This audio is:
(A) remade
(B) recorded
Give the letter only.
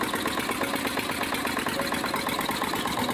B